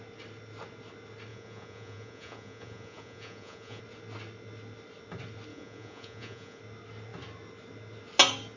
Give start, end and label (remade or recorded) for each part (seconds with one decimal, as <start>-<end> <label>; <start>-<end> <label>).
0.0-1.3 recorded; 1.3-3.8 remade; 3.8-5.5 recorded; 5.5-6.6 remade; 6.6-8.6 recorded